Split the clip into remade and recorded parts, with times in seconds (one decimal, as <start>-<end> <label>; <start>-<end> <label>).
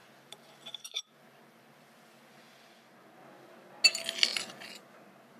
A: 0.0-2.3 remade; 2.3-4.3 recorded; 4.3-4.9 remade; 4.9-5.4 recorded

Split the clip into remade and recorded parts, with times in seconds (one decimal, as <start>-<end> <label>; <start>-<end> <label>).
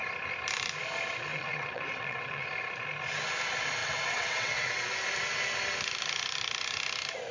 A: 0.0-1.3 recorded; 1.3-2.5 remade; 2.5-3.8 recorded; 3.8-4.9 remade; 4.9-7.3 recorded